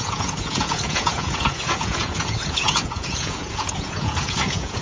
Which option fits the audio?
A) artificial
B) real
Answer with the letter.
A